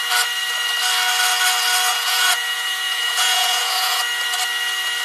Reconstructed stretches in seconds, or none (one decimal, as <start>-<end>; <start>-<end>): 1.9-4.0